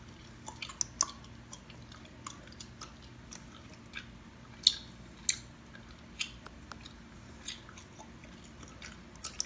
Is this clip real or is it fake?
real